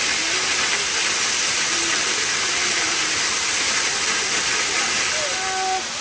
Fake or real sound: real